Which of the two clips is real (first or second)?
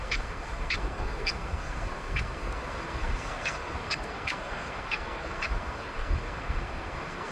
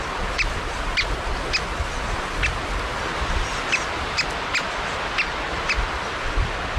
second